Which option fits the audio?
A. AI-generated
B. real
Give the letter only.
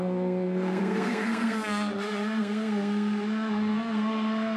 A